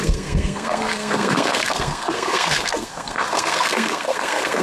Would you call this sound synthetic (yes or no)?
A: yes